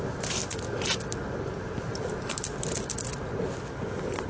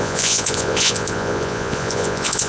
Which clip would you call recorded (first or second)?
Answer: first